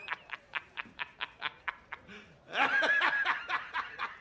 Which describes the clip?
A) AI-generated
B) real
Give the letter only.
A